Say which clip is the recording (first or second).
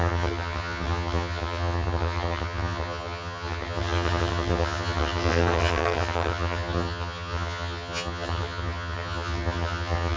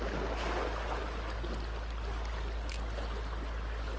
second